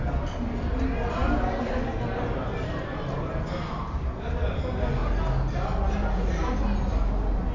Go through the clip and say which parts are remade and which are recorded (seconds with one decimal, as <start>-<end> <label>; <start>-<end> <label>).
0.0-7.5 recorded